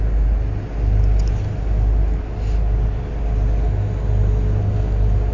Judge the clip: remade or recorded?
recorded